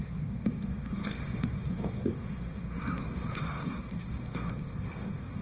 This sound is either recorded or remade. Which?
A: remade